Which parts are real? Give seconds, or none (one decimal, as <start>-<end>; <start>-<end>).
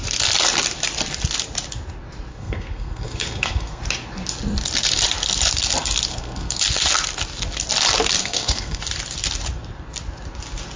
0.0-2.3; 3.8-6.1; 6.6-8.2; 8.8-10.8